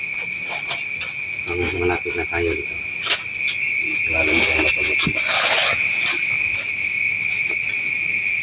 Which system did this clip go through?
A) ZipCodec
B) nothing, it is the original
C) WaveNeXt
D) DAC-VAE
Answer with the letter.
B